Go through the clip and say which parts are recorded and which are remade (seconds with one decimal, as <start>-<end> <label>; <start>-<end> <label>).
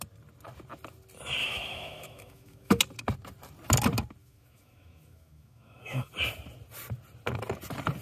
0.0-1.4 recorded; 1.4-2.8 remade; 2.8-4.2 recorded; 4.2-6.1 remade; 6.1-8.0 recorded